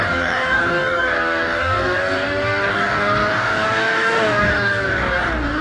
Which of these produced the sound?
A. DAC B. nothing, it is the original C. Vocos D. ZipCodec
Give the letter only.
A